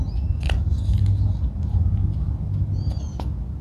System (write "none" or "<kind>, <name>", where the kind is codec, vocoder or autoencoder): none